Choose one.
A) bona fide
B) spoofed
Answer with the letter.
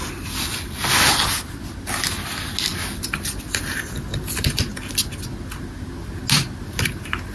A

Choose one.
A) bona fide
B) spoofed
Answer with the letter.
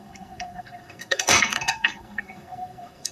B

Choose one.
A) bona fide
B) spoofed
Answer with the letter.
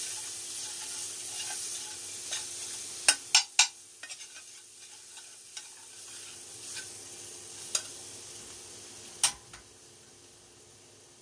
A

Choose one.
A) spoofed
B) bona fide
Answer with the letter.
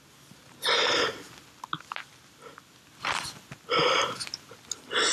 B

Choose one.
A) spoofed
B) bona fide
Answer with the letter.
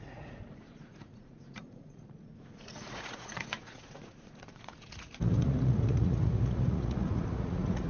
A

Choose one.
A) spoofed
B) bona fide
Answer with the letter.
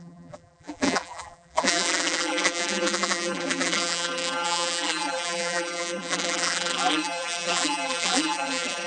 A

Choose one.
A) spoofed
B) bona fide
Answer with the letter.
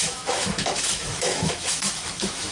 A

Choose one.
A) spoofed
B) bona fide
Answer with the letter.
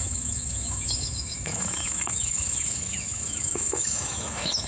A